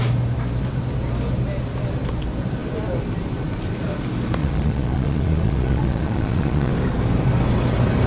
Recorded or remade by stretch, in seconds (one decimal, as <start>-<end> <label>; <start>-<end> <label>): 0.0-4.4 recorded; 4.4-6.7 remade; 6.7-8.1 recorded